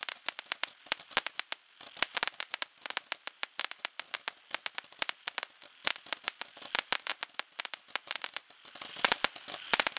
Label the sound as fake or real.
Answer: real